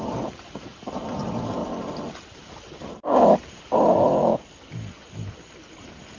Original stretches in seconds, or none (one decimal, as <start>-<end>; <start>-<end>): 1.6-2.5; 4.3-5.8